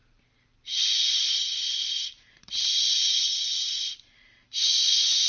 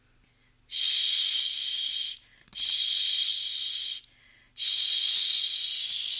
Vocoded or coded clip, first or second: first